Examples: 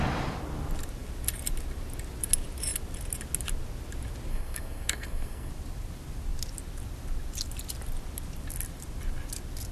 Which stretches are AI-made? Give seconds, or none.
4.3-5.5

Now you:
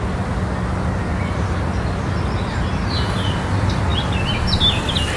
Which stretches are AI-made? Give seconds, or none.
none

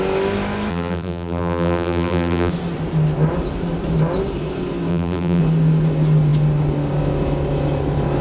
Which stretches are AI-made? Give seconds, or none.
0.7-2.5; 4.9-5.4

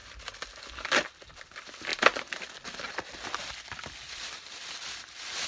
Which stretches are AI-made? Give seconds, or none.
none